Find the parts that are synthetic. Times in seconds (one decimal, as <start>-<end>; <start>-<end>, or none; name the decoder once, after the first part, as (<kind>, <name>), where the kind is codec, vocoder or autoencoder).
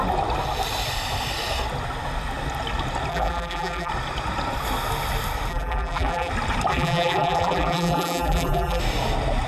3.1-3.9 (vocoder, BigVGAN v2); 5.5-6.3; 6.7-8.8